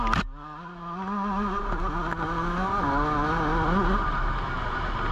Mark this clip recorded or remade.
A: recorded